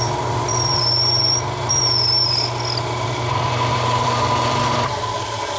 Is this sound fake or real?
real